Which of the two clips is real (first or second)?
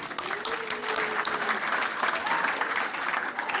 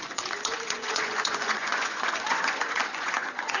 first